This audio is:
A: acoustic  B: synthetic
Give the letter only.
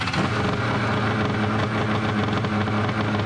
A